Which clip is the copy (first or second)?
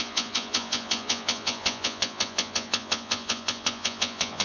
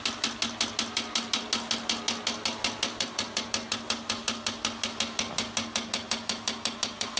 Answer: first